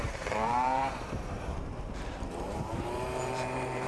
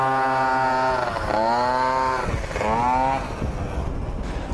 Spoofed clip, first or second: first